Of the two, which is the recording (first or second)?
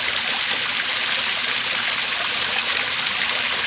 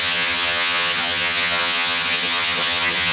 first